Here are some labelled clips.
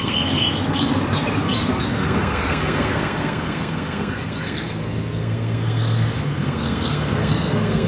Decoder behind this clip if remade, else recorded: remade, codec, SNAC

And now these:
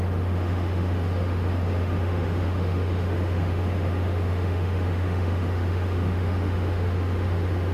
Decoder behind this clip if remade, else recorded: remade, autoencoder, DAC-VAE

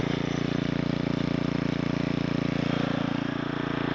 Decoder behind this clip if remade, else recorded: recorded